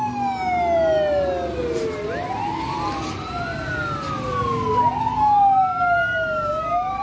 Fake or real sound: real